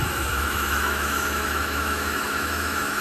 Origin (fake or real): fake